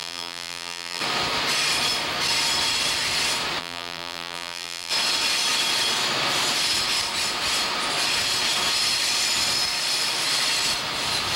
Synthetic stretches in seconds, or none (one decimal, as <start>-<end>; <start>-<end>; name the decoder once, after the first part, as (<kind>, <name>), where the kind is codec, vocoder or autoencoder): 0.0-1.0 (vocoder, BigVGAN v2); 3.6-4.9